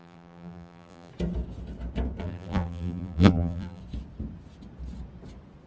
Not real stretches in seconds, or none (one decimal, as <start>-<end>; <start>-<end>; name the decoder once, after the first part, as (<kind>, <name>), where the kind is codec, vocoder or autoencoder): 0.0-1.1 (vocoder, BigVGAN v2); 2.2-3.8